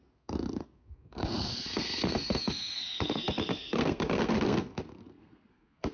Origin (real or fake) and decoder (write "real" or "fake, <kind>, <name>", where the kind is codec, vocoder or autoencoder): fake, codec, SNAC